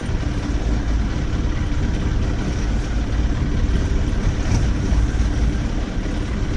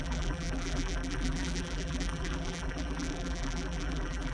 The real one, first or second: first